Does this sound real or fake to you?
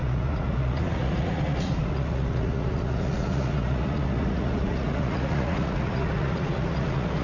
fake